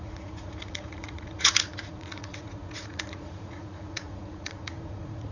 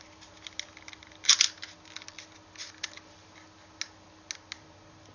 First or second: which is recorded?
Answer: second